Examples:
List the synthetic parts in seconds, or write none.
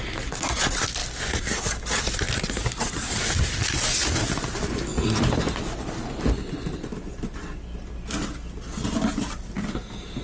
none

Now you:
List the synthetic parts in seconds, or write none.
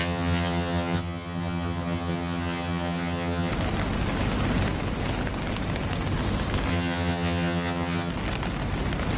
0.0-3.5 (vocoder, HiFi-GAN); 6.7-8.1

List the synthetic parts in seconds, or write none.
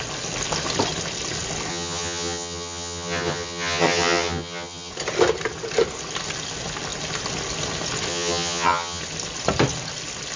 1.7-4.9 (vocoder, HiFi-GAN); 8.1-9.0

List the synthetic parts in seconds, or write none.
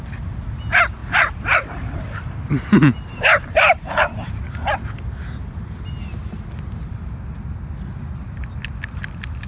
1.0-4.5 (vocoder, BigVGAN v2)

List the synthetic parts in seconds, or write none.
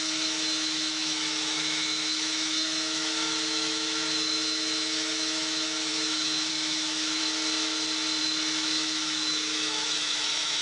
0.0-7.2 (autoencoder, DAC-VAE); 8.2-10.6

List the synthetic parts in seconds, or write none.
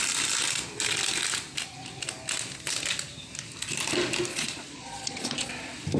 4.3-5.5 (vocoder, Vocos)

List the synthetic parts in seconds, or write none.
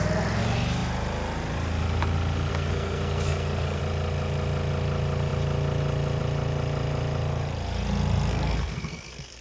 2.5-3.8 (codec, SNAC); 8.3-9.4